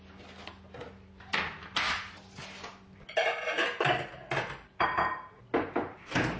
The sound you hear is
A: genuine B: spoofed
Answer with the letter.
A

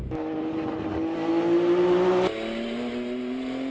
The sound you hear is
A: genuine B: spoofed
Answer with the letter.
A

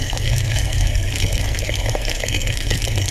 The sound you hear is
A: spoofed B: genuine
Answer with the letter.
A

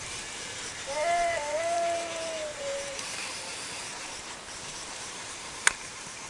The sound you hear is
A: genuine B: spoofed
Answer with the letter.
B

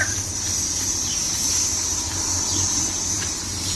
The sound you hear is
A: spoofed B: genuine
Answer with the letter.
A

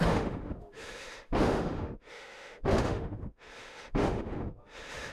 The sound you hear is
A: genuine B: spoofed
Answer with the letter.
B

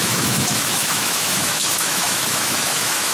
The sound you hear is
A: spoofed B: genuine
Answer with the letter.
A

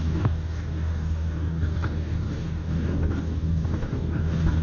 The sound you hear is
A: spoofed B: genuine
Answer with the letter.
A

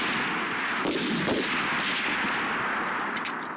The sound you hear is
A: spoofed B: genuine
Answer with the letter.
B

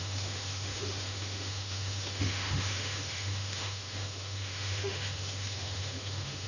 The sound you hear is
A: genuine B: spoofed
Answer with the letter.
B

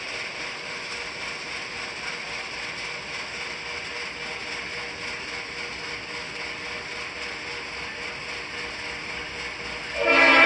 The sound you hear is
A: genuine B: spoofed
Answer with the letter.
A